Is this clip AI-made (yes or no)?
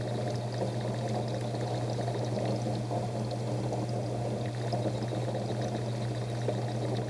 no